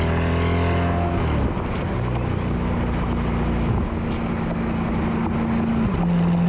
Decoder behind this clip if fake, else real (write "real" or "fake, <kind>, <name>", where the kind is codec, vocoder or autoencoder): real